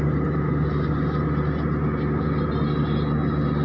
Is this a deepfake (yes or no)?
no